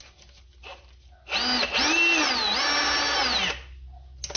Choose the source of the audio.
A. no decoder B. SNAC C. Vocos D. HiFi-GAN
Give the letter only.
A